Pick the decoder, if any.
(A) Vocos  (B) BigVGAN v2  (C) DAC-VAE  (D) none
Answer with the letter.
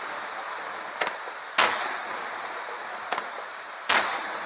B